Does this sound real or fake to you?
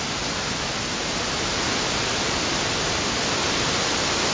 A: real